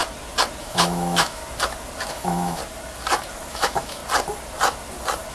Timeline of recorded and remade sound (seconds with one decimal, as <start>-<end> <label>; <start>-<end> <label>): 0.0-0.6 recorded; 0.6-1.4 remade; 1.4-2.1 recorded; 2.1-2.6 remade; 2.6-3.5 recorded; 3.5-4.0 remade; 4.0-5.3 recorded